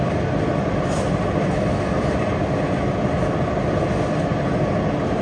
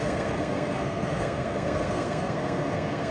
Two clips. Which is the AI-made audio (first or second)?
second